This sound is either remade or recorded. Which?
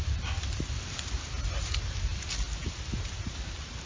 recorded